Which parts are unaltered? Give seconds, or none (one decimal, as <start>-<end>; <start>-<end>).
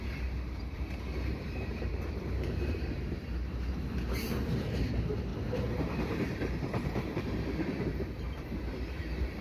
none